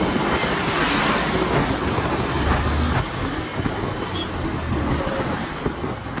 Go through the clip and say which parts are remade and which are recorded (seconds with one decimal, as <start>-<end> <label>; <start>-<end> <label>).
0.0-6.2 recorded